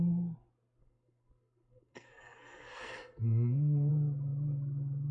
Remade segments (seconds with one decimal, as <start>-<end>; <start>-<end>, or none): 0.8-3.9